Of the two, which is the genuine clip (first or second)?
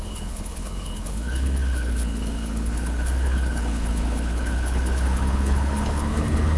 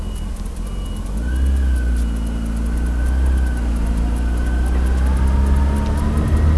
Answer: second